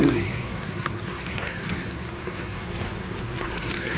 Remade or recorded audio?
remade